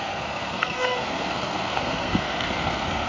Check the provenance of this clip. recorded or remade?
remade